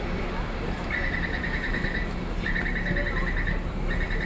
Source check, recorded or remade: recorded